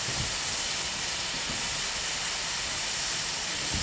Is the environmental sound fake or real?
real